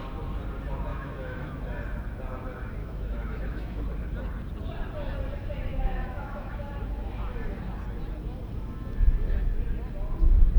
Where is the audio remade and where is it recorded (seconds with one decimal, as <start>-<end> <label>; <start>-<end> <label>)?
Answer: 0.0-0.9 recorded; 0.9-1.6 remade; 1.6-2.8 recorded; 2.8-3.8 remade; 3.8-5.7 recorded; 5.7-6.7 remade; 6.7-10.6 recorded